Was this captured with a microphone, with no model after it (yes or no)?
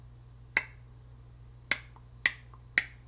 yes